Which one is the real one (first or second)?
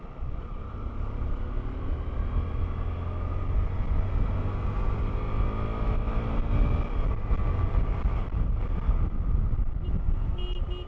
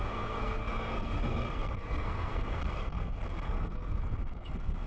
first